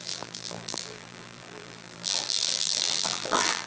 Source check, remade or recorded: remade